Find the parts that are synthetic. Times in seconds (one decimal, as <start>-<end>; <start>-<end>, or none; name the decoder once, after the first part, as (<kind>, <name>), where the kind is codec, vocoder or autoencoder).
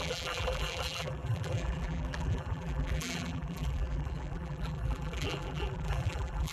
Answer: 0.0-6.5 (vocoder, BigVGAN v2)